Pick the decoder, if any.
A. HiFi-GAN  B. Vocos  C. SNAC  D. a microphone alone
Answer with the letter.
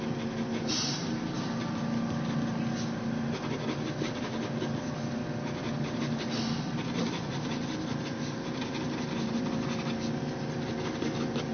D